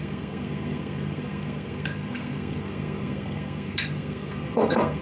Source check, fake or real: fake